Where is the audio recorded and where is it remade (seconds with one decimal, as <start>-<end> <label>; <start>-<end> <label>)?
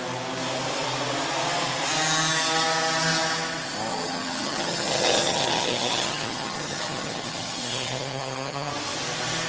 0.0-3.9 recorded; 3.9-8.7 remade; 8.7-9.5 recorded